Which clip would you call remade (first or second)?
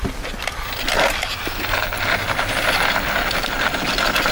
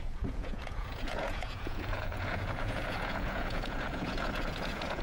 second